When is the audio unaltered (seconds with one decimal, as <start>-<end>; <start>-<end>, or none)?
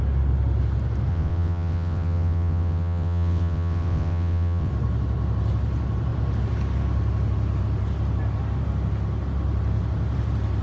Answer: 0.0-1.1; 4.7-10.6